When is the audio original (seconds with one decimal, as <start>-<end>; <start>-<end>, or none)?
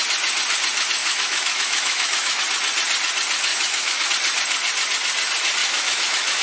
0.0-1.0; 2.4-3.5; 4.1-5.6